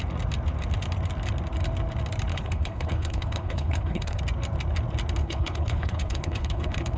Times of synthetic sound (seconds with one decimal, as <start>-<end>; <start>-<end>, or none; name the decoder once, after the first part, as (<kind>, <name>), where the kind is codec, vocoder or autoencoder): 2.3-4.2 (codec, HILCodec); 5.2-7.0